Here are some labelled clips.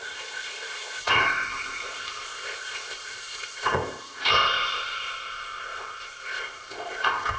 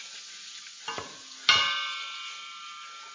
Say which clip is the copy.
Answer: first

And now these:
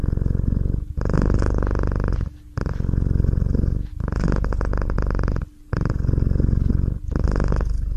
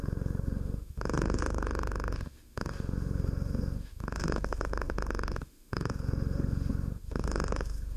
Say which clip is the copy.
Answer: second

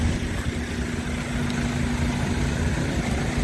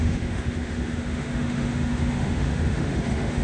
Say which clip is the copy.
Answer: second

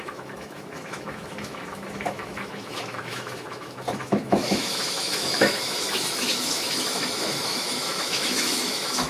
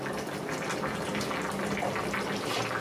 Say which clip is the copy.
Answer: first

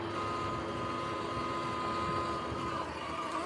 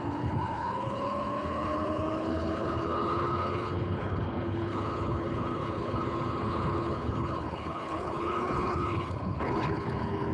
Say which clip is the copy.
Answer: second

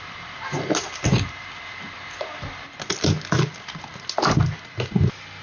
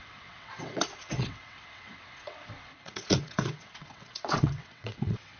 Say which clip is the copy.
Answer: second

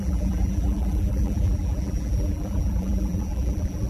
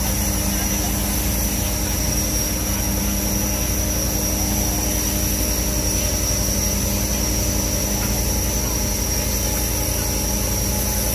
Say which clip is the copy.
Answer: first